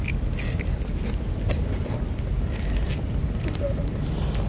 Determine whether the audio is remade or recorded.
recorded